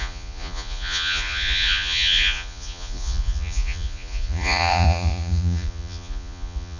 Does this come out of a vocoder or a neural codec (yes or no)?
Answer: yes